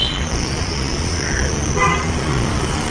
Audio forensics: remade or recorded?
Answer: remade